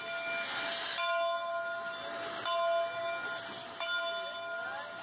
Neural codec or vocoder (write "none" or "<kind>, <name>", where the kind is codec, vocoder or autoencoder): none